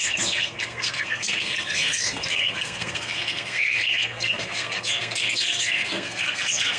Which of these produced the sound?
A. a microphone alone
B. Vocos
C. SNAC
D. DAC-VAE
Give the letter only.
C